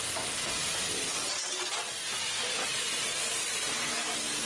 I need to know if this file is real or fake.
real